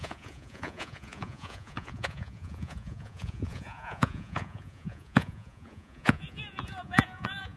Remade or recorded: remade